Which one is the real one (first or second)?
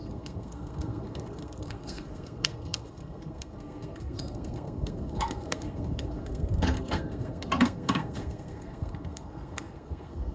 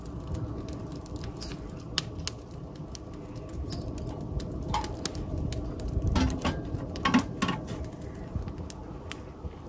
second